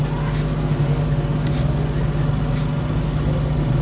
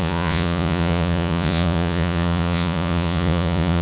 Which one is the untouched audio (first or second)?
first